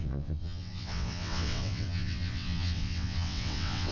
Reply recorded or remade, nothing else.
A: remade